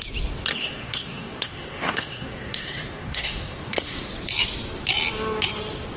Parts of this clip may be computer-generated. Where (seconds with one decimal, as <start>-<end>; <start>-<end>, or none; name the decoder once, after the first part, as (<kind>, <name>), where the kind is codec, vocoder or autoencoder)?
0.5-4.1 (codec, SNAC)